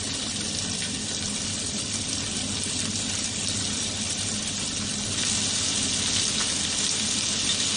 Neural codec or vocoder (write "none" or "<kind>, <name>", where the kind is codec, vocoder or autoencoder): none